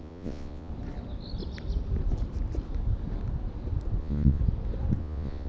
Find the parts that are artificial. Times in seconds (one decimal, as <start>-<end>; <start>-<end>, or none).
0.0-0.7; 4.0-4.4; 5.0-5.5